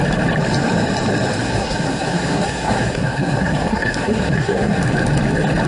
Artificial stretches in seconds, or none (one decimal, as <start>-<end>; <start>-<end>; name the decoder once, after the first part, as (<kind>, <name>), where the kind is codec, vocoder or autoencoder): 1.4-4.8 (codec, SNAC)